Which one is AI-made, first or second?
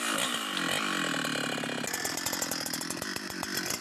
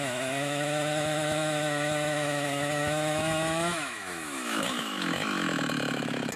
second